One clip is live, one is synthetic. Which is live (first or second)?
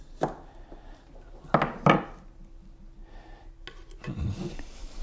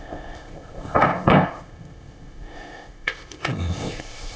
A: first